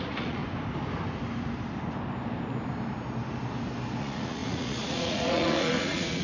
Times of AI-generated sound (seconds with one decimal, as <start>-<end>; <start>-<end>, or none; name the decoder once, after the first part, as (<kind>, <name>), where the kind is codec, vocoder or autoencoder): 0.0-0.4 (vocoder, Vocos); 4.0-6.2